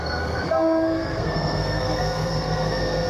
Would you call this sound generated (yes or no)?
yes